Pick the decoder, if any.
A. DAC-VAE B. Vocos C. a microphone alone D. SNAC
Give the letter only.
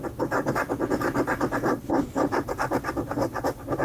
C